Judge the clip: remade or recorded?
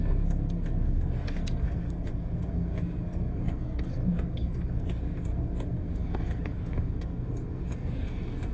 remade